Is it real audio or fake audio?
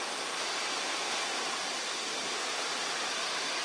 real